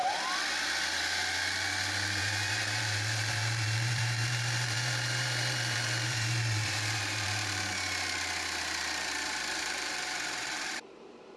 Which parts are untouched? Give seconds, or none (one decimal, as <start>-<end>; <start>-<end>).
0.0-2.2; 7.7-9.6